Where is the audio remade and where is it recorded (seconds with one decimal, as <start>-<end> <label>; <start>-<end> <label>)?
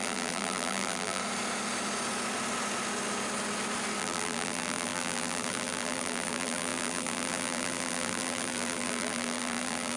0.0-1.2 remade; 1.2-4.0 recorded; 4.0-10.0 remade